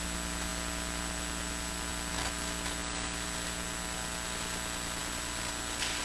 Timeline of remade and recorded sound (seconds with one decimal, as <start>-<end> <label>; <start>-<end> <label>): 0.0-6.0 recorded